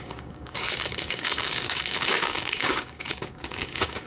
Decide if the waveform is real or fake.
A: fake